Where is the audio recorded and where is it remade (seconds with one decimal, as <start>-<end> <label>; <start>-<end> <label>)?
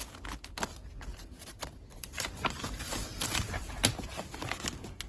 0.0-1.1 recorded; 1.1-4.2 remade; 4.2-5.1 recorded